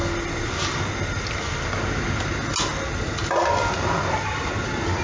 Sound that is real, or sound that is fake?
real